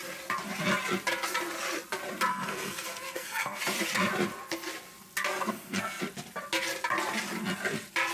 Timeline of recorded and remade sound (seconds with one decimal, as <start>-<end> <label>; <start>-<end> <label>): 0.0-2.3 recorded; 2.3-3.6 remade; 3.6-5.3 recorded; 5.3-6.0 remade; 6.0-8.1 recorded